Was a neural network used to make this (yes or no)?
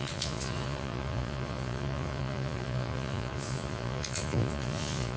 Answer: yes